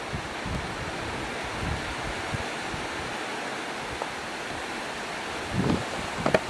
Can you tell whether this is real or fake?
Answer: real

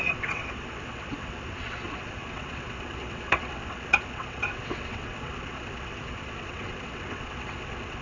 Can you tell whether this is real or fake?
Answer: fake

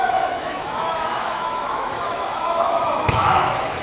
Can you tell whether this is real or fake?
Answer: fake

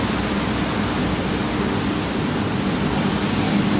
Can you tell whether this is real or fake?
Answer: real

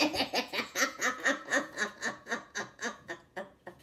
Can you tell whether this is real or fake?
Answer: fake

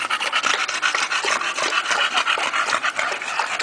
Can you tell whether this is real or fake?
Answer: real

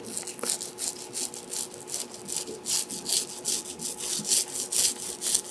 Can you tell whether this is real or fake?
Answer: real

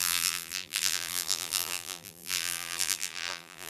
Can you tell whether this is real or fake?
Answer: fake